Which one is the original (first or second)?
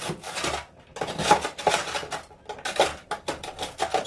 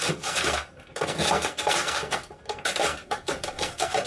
first